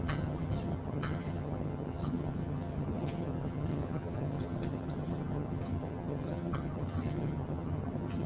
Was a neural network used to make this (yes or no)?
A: yes